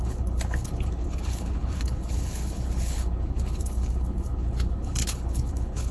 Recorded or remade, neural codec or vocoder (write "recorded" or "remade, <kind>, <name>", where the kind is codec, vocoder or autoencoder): remade, codec, HILCodec